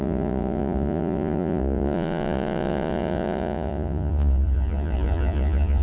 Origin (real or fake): fake